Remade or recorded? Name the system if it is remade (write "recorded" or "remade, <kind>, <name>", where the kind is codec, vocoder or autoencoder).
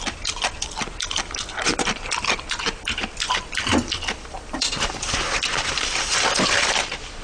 remade, vocoder, BigVGAN v2